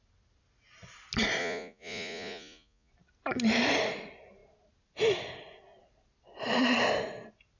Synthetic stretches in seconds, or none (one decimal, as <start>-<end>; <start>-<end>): 1.4-2.9